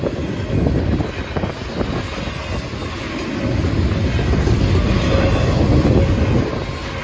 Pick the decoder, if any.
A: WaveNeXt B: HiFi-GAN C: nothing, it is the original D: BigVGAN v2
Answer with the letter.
C